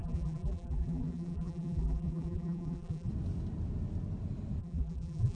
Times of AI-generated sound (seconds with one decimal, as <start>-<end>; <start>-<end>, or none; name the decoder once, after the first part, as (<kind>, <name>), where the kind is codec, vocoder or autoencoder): 0.0-3.1 (vocoder, BigVGAN v2); 4.6-5.4